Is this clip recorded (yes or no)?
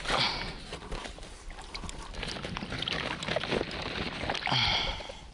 yes